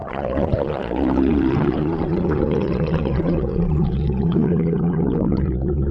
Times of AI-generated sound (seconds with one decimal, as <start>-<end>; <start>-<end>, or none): 0.0-5.9